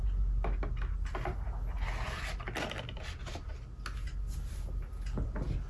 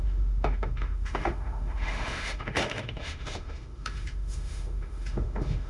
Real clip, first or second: first